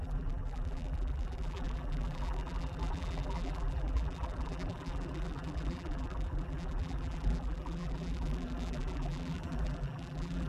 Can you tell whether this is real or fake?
fake